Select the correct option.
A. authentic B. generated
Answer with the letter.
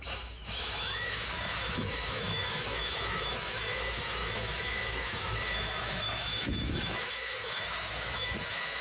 B